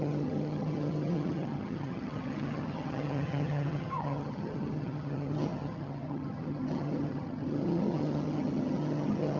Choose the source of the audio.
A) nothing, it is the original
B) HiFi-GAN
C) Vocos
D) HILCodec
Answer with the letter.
B